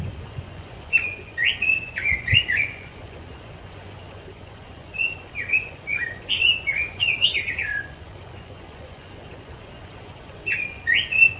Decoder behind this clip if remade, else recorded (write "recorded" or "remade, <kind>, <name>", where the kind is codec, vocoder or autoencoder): remade, vocoder, Vocos